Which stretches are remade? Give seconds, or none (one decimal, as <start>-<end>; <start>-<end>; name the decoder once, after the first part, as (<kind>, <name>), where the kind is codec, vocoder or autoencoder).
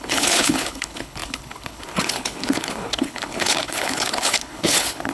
0.0-5.1 (codec, HILCodec)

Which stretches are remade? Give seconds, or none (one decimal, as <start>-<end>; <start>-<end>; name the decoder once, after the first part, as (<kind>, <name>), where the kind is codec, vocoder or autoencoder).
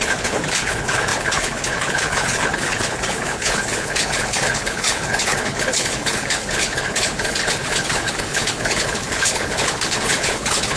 0.0-10.8 (codec, HILCodec)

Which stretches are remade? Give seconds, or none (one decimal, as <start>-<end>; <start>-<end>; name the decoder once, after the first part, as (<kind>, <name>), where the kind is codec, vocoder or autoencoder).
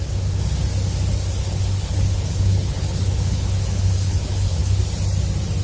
1.4-4.8 (codec, HILCodec)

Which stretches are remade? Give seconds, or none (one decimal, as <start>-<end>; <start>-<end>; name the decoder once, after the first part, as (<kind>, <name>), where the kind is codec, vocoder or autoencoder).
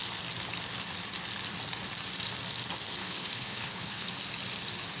3.0-4.1 (codec, HILCodec)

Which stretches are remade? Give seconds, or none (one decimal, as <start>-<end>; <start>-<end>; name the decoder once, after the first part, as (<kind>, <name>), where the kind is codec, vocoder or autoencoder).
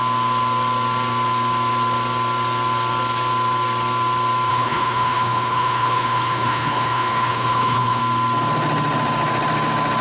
4.5-8.0 (codec, HILCodec)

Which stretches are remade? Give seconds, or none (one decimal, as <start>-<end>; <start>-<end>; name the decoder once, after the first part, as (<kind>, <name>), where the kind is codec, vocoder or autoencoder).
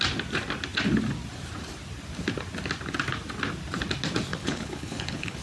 4.3-5.4 (codec, HILCodec)